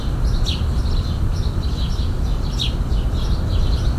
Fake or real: real